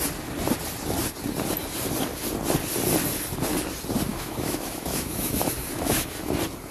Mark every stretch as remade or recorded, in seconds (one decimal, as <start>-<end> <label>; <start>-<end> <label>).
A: 0.0-4.1 recorded; 4.1-6.3 remade; 6.3-6.7 recorded